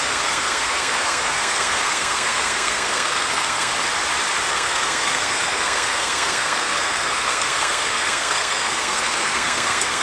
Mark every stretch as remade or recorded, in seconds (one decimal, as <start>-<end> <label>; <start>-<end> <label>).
0.0-3.7 remade; 3.7-4.5 recorded; 4.5-10.0 remade